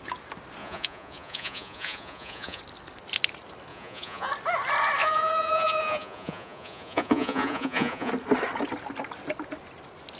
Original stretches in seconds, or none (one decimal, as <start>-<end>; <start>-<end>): 0.0-0.6; 2.6-3.7; 4.3-5.0; 8.1-10.2